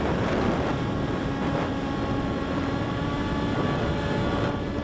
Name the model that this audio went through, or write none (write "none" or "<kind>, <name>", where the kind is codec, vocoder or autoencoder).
none